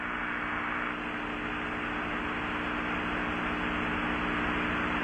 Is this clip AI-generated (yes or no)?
no